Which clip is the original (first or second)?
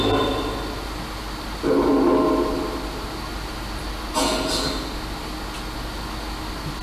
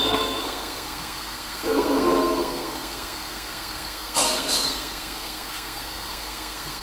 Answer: first